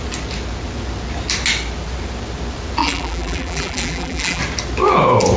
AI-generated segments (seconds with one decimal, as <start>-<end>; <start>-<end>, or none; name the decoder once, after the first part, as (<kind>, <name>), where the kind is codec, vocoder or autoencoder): 2.8-4.4 (vocoder, BigVGAN v2)

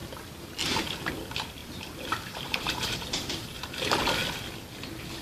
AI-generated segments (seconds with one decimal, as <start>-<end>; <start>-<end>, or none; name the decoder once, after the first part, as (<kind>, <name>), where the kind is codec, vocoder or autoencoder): 1.6-3.7 (vocoder, BigVGAN v2)

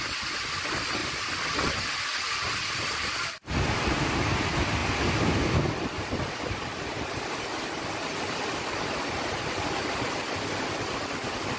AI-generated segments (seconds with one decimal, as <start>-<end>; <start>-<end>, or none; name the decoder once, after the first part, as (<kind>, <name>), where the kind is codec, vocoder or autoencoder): 0.0-11.6 (vocoder, BigVGAN v2)

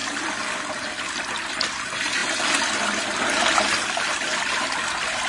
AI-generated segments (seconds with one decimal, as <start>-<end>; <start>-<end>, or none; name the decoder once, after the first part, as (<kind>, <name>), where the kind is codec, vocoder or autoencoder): none

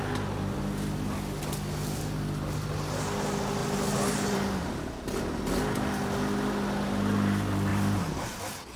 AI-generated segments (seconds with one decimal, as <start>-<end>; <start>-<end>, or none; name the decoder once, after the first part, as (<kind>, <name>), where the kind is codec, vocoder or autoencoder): 3.6-5.2 (vocoder, BigVGAN v2); 7.7-8.4